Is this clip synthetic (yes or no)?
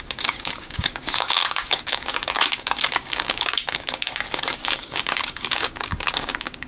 yes